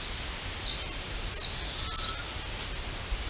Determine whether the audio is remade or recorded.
recorded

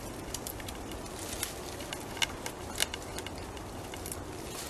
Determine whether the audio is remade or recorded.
recorded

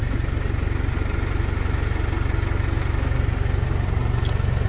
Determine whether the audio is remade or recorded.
recorded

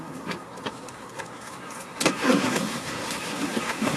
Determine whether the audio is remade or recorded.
remade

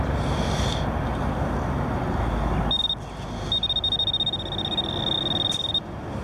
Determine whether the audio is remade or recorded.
recorded